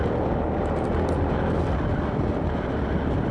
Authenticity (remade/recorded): recorded